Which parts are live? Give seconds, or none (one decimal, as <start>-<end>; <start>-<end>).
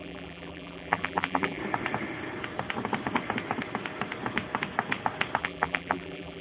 1.6-5.4